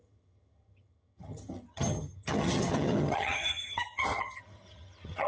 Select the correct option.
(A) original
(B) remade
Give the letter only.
B